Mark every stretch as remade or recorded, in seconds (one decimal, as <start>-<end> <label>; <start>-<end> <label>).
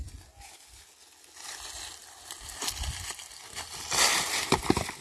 0.0-5.0 recorded